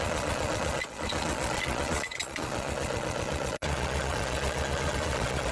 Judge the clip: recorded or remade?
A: remade